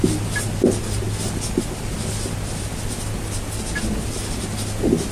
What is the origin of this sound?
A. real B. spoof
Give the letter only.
A